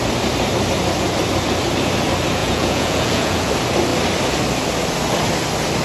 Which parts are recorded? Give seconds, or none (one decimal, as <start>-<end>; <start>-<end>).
0.0-2.4; 3.5-5.8